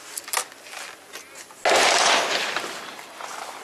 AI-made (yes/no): no